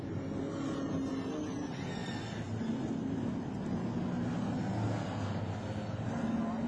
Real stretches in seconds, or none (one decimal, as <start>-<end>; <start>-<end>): 0.0-6.7